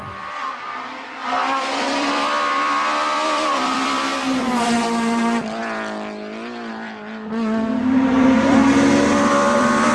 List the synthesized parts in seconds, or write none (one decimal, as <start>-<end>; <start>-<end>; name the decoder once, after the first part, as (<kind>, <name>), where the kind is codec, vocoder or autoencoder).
0.0-8.6 (vocoder, BigVGAN v2); 9.3-9.9